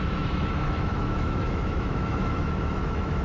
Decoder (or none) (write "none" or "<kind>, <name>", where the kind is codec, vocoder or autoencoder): autoencoder, DAC-VAE